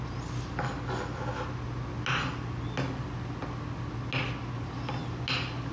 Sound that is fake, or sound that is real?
real